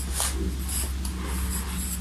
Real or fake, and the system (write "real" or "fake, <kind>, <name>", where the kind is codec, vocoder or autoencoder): real